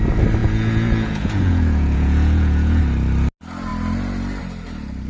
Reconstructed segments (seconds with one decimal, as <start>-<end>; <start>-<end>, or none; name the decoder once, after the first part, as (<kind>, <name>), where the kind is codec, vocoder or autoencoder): 0.4-2.8 (vocoder, Vocos)